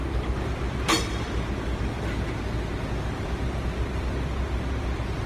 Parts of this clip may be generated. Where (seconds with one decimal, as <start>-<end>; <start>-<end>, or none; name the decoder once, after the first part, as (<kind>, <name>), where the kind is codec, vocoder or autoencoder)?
none